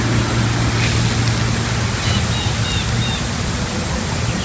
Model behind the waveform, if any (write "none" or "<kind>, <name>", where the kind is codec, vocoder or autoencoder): none